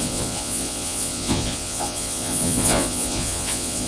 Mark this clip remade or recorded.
remade